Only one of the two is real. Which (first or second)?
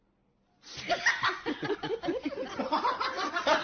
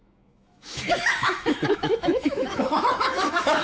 first